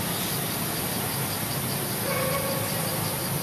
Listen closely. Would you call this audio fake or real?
real